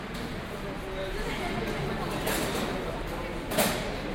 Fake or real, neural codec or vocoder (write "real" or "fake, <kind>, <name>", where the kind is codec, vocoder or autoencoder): real